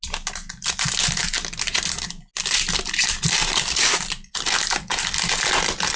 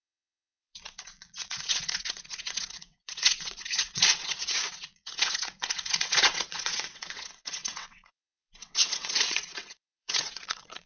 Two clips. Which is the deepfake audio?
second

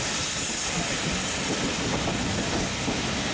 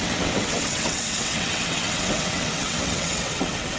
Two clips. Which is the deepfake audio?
second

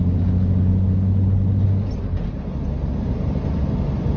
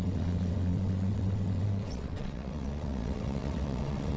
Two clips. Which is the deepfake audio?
second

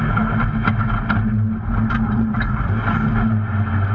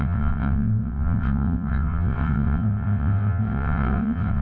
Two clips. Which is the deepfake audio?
second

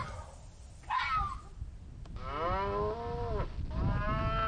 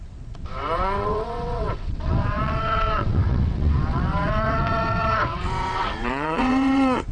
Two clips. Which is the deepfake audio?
second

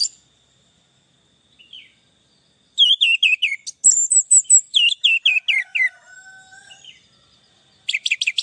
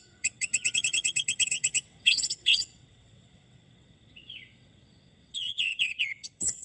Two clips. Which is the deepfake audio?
second